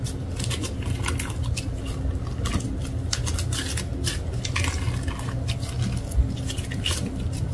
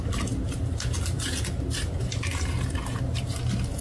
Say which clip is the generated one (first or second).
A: second